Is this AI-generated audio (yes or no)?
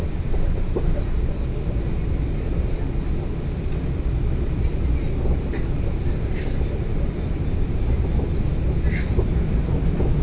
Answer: no